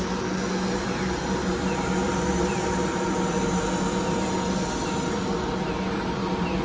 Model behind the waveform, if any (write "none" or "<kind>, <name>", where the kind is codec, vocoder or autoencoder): none